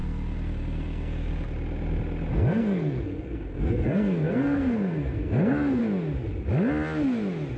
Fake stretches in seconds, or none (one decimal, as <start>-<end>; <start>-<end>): 0.0-1.3; 2.3-5.8